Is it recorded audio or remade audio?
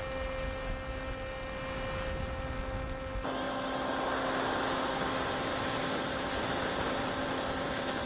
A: recorded